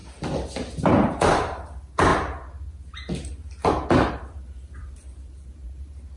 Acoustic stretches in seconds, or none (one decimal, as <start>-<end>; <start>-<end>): 0.0-0.8; 2.1-4.1